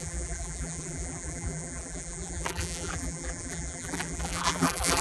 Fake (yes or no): yes